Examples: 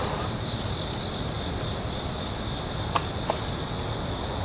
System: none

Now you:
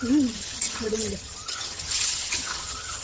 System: vocoder, HiFi-GAN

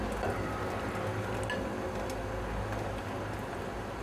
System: none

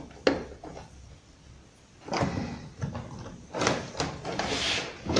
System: none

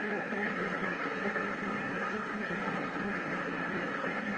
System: codec, SNAC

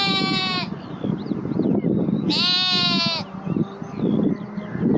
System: none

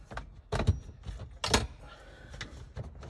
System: none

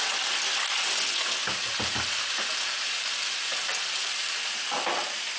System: none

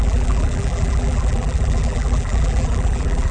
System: vocoder, BigVGAN v2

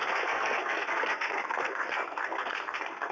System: codec, SNAC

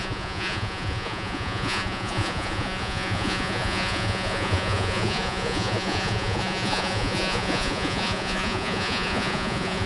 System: vocoder, Vocos